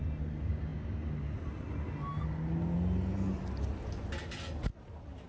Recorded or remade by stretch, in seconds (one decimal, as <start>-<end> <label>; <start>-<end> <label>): 0.0-5.3 recorded

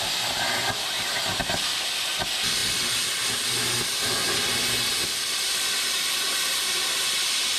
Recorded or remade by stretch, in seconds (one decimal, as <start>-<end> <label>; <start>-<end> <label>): 0.0-7.6 recorded

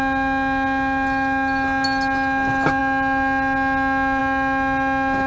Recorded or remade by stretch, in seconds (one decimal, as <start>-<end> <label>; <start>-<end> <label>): 0.0-5.3 recorded

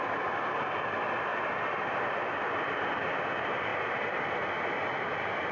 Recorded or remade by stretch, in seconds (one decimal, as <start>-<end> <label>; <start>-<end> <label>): 0.0-5.5 recorded

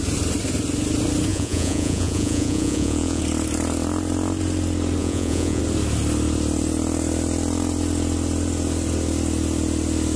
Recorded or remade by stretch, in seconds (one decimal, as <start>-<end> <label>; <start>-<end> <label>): 0.0-1.3 recorded; 1.3-3.2 remade; 3.2-5.0 recorded; 5.0-5.6 remade; 5.6-10.2 recorded

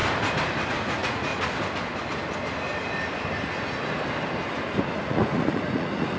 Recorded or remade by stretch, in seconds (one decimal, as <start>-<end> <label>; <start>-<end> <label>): 0.0-0.7 recorded; 0.7-1.3 remade; 1.3-4.9 recorded; 4.9-6.2 remade

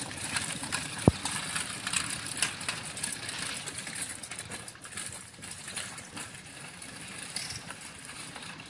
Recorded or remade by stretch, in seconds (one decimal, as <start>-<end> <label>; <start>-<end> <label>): 0.0-1.2 remade; 1.2-5.2 recorded; 5.2-8.7 remade

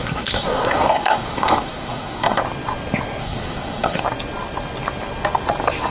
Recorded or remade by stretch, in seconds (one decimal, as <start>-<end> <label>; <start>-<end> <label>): 0.0-2.4 remade; 2.4-3.2 recorded; 3.2-4.0 remade; 4.0-5.9 recorded